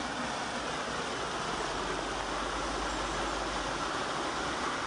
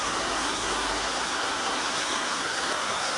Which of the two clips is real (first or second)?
first